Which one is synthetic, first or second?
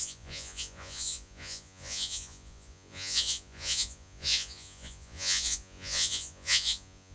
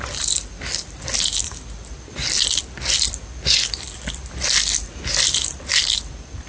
first